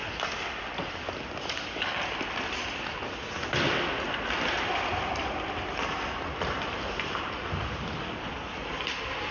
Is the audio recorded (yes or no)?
yes